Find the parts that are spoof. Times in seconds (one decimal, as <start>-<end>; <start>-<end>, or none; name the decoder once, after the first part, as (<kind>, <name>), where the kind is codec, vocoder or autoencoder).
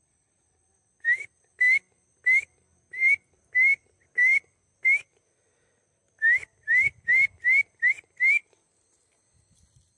none